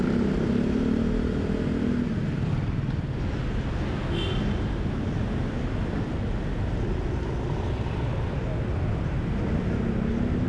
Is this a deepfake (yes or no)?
no